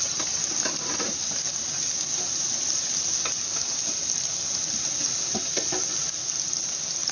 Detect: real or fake real